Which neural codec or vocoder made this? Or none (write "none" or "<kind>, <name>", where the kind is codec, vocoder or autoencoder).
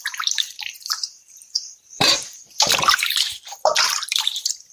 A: vocoder, BigVGAN v2